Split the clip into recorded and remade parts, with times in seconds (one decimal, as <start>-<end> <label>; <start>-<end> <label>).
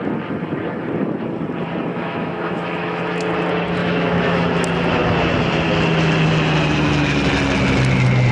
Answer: 0.0-1.9 recorded; 1.9-3.0 remade; 3.0-3.8 recorded; 3.8-4.4 remade; 4.4-8.3 recorded